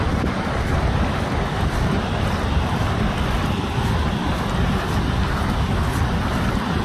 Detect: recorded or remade recorded